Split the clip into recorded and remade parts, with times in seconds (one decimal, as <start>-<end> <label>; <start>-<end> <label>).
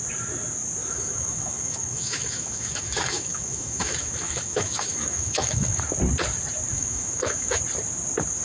0.0-0.8 recorded; 0.8-5.8 remade; 5.8-6.7 recorded; 6.7-7.6 remade; 7.6-8.4 recorded